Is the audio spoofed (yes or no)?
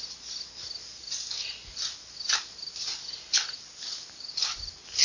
no